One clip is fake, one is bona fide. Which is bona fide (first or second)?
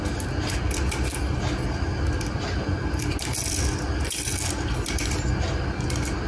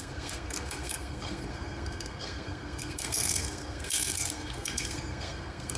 first